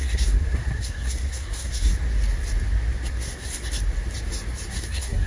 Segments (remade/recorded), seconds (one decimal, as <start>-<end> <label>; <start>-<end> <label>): 0.0-1.9 remade; 1.9-3.1 recorded; 3.1-3.6 remade; 3.6-4.7 recorded; 4.7-5.3 remade

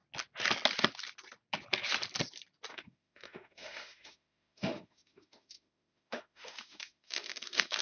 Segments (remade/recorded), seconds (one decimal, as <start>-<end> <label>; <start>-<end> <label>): 0.0-2.7 recorded; 2.7-7.8 remade